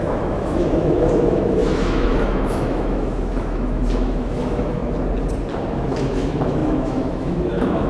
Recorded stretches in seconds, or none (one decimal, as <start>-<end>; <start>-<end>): 4.8-5.7